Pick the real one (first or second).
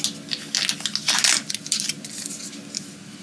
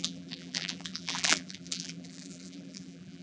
first